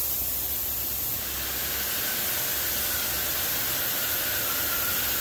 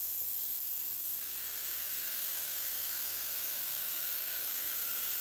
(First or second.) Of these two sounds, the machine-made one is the second